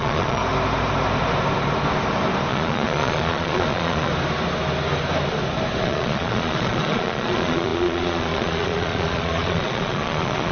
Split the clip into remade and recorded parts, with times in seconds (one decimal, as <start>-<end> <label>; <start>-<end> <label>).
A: 0.0-0.4 remade; 0.4-2.5 recorded; 2.5-4.1 remade; 4.1-5.8 recorded; 5.8-10.5 remade